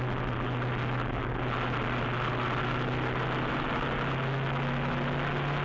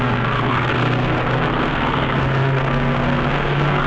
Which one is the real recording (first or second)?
first